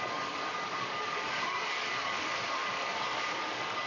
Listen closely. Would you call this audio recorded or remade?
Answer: remade